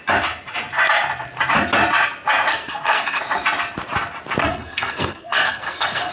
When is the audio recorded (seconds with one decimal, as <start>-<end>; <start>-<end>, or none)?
0.0-2.5; 3.2-4.4